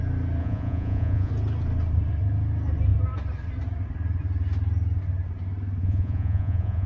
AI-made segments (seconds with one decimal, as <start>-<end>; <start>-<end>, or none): 0.4-1.3; 5.8-6.9